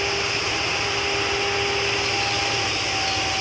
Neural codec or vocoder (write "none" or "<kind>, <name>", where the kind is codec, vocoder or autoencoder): none